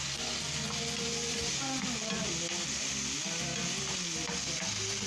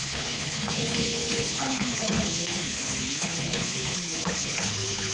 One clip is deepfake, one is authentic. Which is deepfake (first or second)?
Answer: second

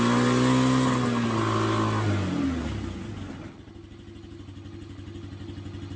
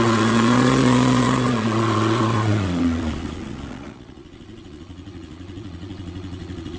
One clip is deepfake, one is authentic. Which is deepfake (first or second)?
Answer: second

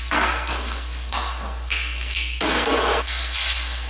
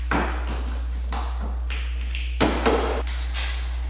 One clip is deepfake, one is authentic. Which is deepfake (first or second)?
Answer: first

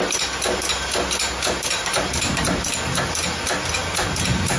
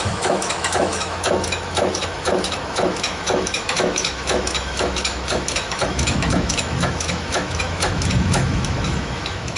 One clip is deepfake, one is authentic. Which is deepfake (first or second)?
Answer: second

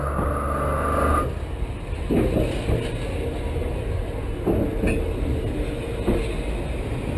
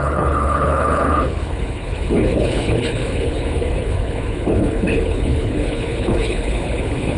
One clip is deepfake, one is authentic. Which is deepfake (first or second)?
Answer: second